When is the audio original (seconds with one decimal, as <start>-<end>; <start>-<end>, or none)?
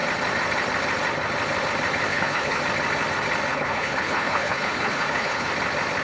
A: 0.0-2.1; 2.6-3.5; 5.5-6.0